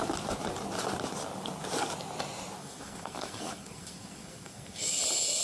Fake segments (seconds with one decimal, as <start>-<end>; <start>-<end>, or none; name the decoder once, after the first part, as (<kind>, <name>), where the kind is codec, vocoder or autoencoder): 2.6-5.0 (codec, SNAC)